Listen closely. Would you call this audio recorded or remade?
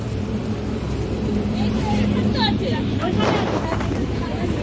remade